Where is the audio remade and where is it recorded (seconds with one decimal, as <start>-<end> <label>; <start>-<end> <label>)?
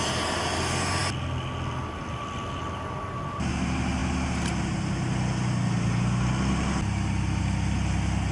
0.0-8.3 recorded